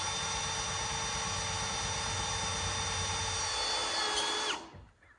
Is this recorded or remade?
recorded